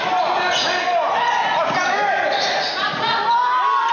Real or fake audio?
real